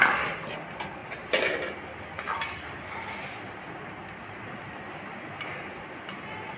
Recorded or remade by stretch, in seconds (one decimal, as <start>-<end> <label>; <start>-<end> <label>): 0.0-6.6 recorded